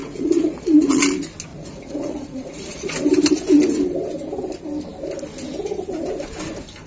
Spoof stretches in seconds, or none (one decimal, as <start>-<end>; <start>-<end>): 0.0-1.0; 1.5-2.9